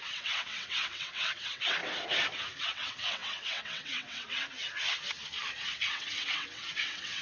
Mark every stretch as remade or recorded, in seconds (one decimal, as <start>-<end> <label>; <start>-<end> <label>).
0.0-1.8 remade; 1.8-2.6 recorded; 2.6-4.6 remade; 4.6-5.6 recorded; 5.6-7.2 remade